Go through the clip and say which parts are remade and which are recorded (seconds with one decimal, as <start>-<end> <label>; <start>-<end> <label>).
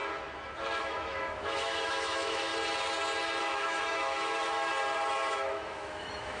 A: 0.0-0.8 recorded; 0.8-2.5 remade; 2.5-3.4 recorded; 3.4-4.7 remade; 4.7-5.3 recorded; 5.3-6.4 remade